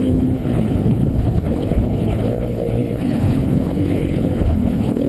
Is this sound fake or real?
fake